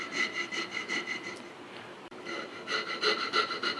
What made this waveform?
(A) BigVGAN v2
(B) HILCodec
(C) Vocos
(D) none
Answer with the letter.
A